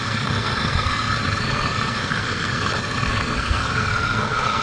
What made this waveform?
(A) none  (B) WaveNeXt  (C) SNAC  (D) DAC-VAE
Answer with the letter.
C